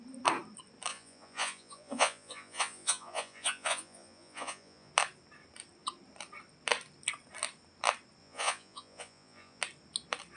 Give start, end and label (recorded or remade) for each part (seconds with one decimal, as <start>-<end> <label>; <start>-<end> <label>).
0.0-0.9 recorded; 0.9-4.9 remade; 4.9-8.2 recorded; 8.2-9.6 remade; 9.6-10.4 recorded